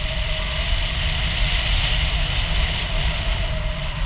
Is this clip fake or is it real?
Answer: real